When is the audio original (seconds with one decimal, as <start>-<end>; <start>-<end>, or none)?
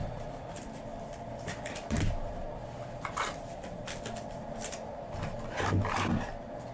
4.0-6.7